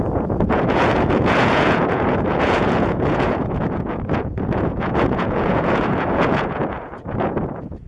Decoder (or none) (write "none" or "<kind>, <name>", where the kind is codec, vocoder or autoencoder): vocoder, Vocos